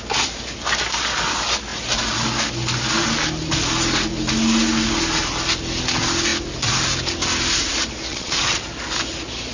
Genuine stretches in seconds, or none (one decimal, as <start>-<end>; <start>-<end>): 0.0-8.1; 8.6-9.5